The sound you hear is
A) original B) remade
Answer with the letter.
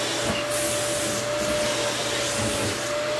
A